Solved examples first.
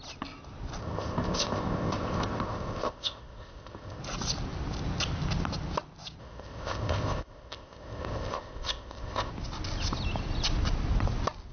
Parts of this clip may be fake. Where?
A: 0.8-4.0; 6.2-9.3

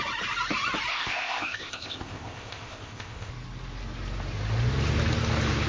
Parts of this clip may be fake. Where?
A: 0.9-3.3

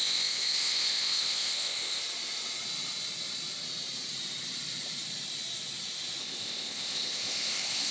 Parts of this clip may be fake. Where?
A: 0.0-2.0; 6.2-7.9